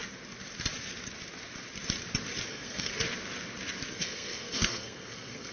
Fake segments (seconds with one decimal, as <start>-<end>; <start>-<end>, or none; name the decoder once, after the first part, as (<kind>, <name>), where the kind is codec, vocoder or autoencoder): 2.5-2.9 (codec, SNAC); 3.9-5.5